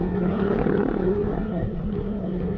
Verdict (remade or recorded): remade